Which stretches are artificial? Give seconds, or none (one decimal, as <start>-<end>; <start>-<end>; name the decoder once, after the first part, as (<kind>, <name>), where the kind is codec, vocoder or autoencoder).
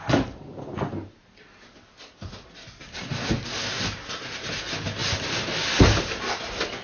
none